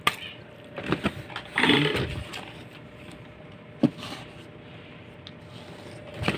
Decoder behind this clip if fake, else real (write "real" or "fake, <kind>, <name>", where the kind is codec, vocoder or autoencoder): real